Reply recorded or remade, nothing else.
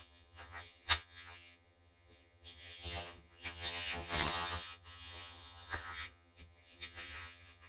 remade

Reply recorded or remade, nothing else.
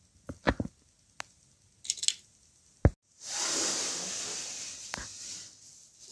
recorded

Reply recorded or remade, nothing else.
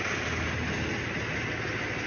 recorded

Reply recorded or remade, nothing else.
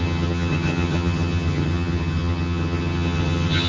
remade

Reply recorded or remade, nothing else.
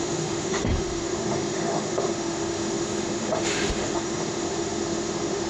remade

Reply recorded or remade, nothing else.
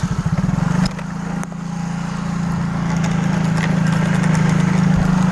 recorded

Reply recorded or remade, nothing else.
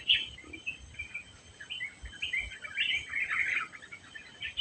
recorded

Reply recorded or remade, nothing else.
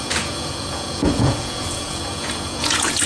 remade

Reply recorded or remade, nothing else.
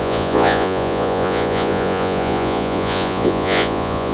remade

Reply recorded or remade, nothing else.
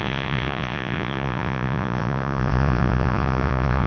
remade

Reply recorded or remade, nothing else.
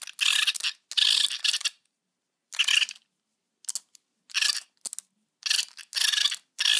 recorded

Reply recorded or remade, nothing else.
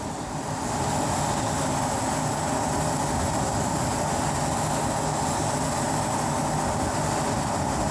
recorded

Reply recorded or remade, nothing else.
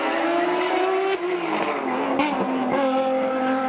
recorded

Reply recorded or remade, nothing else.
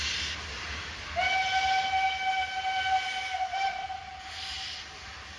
recorded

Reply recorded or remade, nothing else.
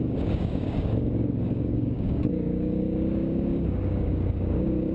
remade